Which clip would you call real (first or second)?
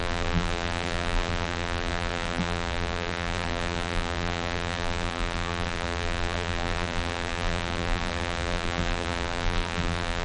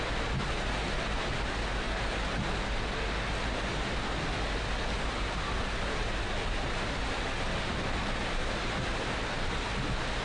second